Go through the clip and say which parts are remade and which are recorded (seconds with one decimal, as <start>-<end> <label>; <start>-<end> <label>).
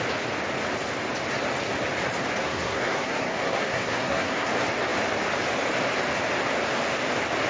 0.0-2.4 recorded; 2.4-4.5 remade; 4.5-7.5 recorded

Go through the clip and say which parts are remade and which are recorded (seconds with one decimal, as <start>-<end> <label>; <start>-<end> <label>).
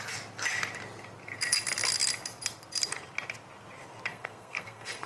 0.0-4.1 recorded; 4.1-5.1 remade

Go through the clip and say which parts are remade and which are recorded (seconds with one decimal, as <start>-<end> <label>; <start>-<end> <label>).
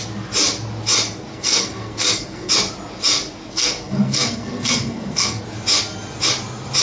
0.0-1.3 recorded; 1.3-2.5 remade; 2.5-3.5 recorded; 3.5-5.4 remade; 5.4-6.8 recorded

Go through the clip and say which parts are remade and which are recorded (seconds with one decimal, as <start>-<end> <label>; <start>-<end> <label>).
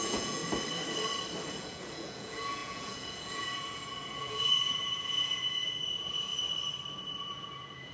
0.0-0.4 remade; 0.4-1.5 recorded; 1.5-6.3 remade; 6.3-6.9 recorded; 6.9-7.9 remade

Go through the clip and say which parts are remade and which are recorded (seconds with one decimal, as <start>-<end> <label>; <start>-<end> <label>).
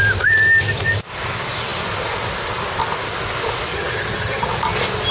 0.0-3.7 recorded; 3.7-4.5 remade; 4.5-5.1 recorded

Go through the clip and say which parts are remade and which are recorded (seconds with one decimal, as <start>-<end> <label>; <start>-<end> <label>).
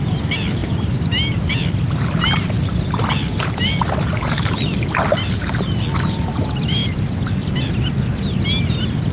0.0-9.1 recorded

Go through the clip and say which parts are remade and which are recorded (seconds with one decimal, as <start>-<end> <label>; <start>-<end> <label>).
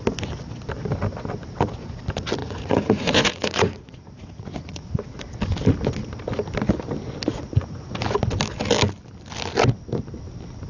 0.0-2.4 recorded; 2.4-5.2 remade; 5.2-7.3 recorded; 7.3-7.9 remade; 7.9-10.7 recorded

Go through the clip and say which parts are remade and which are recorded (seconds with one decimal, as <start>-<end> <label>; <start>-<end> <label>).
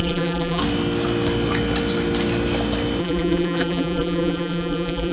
0.0-0.6 remade; 0.6-3.0 recorded; 3.0-5.1 remade